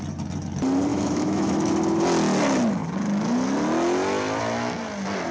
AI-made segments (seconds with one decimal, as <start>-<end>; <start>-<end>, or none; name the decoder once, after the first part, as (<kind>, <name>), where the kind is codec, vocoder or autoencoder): 0.9-1.7 (autoencoder, DAC-VAE)